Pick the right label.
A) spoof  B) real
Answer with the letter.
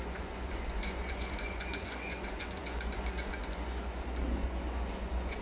A